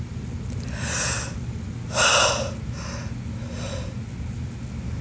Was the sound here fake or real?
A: real